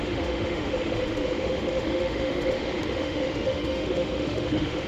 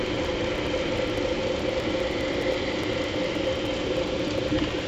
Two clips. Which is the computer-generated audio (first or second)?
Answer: first